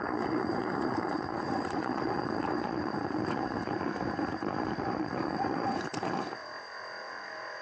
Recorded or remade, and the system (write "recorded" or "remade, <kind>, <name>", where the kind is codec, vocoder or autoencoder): remade, vocoder, Vocos